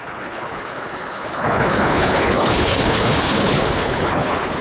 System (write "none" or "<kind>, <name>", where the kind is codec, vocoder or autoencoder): codec, HILCodec